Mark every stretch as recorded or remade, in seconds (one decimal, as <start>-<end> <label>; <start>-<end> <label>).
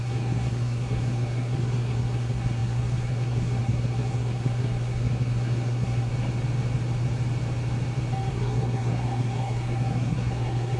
0.0-6.1 remade; 6.1-8.3 recorded; 8.3-10.8 remade